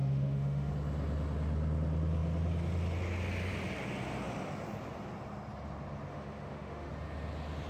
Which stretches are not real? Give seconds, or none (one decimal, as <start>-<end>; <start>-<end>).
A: 0.0-0.7; 6.1-6.9